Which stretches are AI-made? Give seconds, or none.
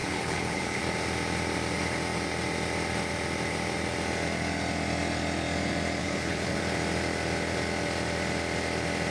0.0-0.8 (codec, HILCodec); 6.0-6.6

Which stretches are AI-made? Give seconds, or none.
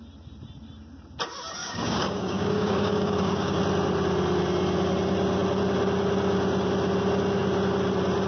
1.6-3.6 (codec, DAC)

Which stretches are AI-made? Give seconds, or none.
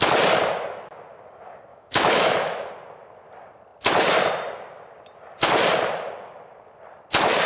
1.7-2.7 (autoencoder, DAC-VAE)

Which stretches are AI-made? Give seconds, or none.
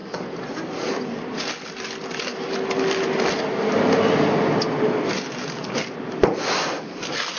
0.0-4.4 (vocoder, BigVGAN v2)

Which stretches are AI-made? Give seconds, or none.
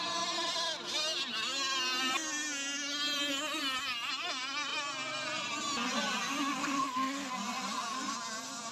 6.6-7.3 (codec, SNAC)